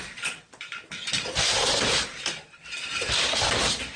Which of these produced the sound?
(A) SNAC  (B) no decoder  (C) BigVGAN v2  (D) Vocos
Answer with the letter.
B